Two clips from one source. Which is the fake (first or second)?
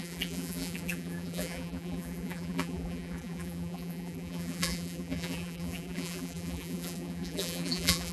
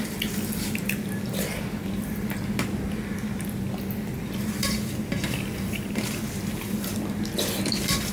first